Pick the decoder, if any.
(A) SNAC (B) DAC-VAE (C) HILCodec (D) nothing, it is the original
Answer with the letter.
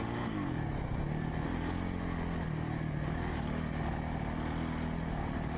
D